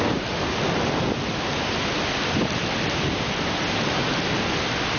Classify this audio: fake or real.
real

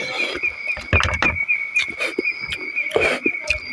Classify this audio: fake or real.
real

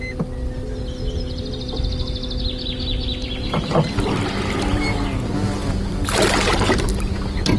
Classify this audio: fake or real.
real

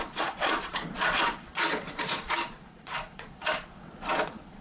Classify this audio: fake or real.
fake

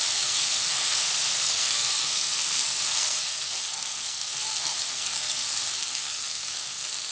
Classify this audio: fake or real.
fake